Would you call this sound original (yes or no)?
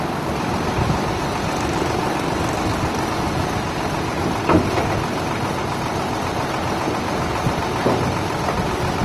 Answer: yes